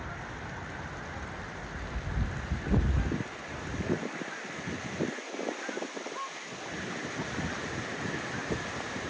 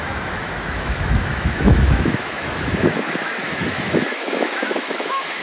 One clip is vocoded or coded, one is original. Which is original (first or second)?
first